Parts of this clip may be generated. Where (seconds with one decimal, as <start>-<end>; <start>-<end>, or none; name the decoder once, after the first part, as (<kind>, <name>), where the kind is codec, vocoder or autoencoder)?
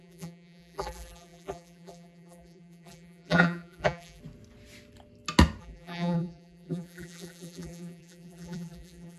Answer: 0.0-4.2 (vocoder, BigVGAN v2); 5.6-9.2